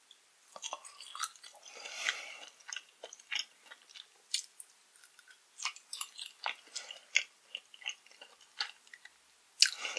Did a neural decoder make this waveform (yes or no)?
no